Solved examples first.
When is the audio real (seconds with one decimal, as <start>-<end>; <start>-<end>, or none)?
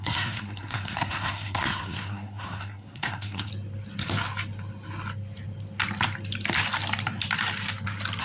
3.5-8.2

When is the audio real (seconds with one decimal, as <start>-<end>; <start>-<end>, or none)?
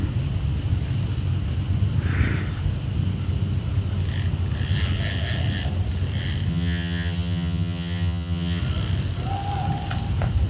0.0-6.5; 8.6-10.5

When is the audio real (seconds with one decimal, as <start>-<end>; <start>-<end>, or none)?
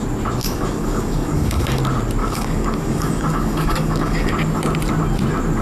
0.0-0.4; 1.8-2.2; 4.3-5.6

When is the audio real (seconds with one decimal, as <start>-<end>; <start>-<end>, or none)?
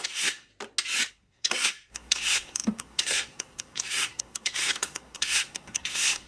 0.5-1.1